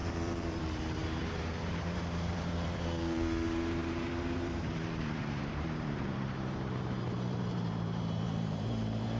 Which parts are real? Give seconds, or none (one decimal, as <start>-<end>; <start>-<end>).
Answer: none